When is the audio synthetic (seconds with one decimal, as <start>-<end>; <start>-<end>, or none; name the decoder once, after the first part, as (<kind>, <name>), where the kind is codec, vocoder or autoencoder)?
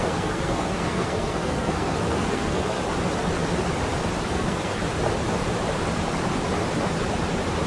0.0-2.8 (codec, SNAC); 4.3-4.8